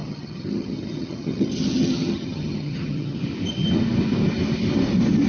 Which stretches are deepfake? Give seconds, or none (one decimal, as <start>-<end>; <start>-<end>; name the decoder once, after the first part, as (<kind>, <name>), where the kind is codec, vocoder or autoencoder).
0.0-3.2 (vocoder, HiFi-GAN)

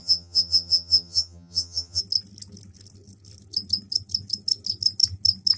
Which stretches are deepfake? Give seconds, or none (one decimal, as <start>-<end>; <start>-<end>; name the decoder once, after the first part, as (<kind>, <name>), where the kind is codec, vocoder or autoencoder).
0.0-2.0 (vocoder, HiFi-GAN)

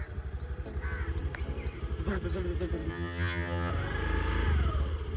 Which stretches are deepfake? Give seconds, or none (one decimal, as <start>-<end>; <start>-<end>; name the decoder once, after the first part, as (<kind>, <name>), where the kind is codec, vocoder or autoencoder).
2.9-3.7 (vocoder, HiFi-GAN)

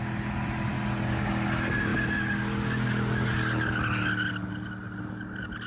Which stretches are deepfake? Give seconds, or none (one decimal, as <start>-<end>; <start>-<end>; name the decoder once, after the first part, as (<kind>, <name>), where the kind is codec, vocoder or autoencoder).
none

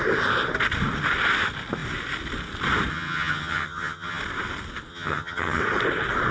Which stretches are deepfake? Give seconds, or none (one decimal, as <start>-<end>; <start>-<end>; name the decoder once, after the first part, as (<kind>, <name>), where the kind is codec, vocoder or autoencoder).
2.9-4.2 (vocoder, HiFi-GAN); 4.9-5.6